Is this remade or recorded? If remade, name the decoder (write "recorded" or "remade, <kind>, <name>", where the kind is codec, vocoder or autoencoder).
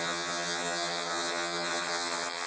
remade, vocoder, HiFi-GAN